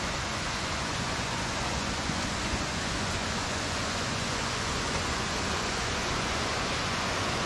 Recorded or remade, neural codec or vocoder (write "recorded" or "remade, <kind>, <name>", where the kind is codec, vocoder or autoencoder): remade, vocoder, Vocos